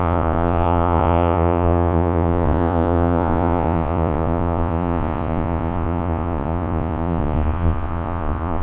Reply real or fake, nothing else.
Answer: fake